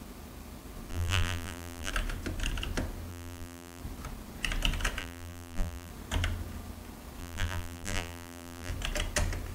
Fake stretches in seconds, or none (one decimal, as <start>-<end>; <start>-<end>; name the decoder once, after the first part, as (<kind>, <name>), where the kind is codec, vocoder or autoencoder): 0.9-1.9 (vocoder, BigVGAN v2); 3.1-3.8; 5.0-5.9; 7.2-8.7